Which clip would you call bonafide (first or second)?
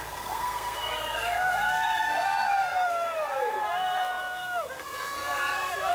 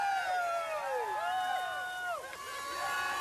second